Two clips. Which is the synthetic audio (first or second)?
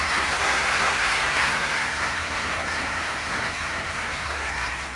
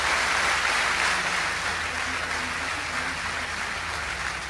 first